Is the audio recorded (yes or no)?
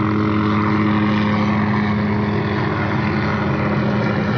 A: yes